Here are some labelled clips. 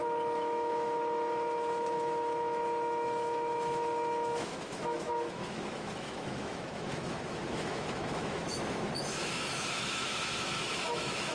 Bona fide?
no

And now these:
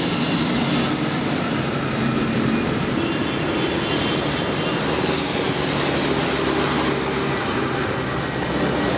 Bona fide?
yes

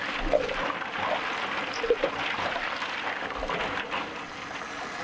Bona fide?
yes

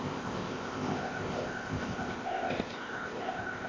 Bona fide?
no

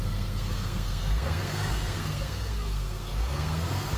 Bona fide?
no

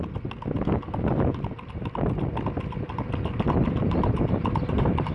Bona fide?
yes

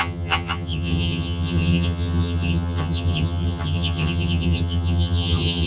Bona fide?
no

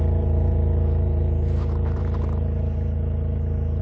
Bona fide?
no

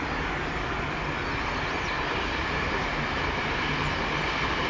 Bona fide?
yes